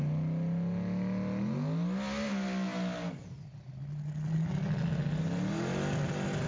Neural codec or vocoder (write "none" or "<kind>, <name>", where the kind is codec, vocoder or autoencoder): none